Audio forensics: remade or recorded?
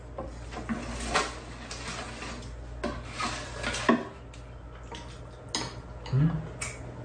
recorded